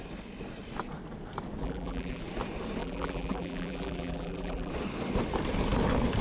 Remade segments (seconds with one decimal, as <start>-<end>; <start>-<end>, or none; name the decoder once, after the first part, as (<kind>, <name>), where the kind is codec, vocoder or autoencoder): 1.6-2.2 (vocoder, BigVGAN v2); 2.8-4.7

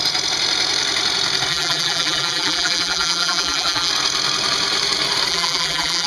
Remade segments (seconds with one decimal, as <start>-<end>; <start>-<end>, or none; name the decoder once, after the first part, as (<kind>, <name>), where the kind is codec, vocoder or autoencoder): 1.5-3.9 (vocoder, BigVGAN v2); 5.3-6.1

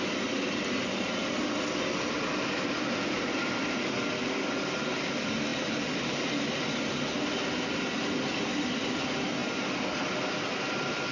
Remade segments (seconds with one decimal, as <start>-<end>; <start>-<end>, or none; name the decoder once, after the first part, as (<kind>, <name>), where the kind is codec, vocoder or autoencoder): none

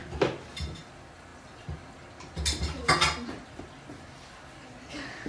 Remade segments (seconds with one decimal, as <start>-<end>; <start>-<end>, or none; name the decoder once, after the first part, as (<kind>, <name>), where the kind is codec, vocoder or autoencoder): none

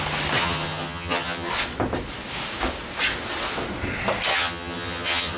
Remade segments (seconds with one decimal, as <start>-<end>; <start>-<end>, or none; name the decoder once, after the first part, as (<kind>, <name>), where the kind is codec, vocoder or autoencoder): 0.4-1.5 (vocoder, HiFi-GAN); 4.3-5.4

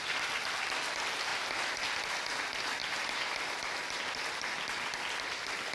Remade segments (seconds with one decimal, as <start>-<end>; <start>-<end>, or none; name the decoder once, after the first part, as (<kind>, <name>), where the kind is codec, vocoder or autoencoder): 0.0-1.3 (vocoder, BigVGAN v2); 2.1-2.8; 4.0-5.7

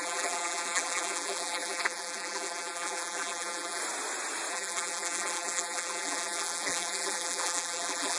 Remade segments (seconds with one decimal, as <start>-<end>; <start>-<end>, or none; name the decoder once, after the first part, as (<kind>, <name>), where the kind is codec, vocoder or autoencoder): 0.0-3.8 (vocoder, BigVGAN v2); 4.5-8.2

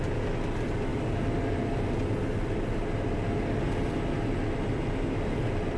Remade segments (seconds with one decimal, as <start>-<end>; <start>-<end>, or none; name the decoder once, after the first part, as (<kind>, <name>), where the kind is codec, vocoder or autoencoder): none